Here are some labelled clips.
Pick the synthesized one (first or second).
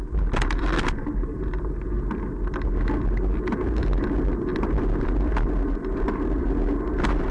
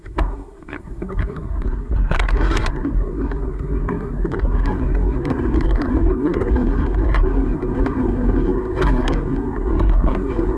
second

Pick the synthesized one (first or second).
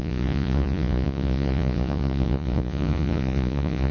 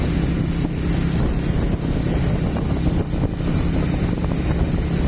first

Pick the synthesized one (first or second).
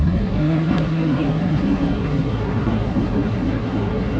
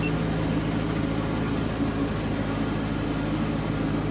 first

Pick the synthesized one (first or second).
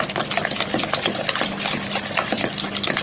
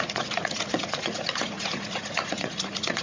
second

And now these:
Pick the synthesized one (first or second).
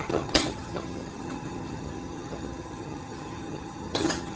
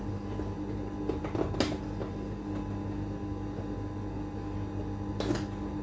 first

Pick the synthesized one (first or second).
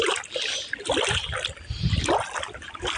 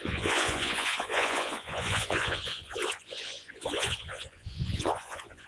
second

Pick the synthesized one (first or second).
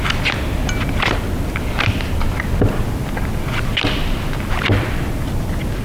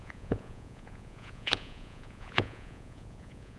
second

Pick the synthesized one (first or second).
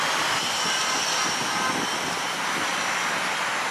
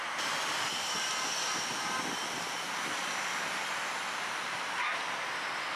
second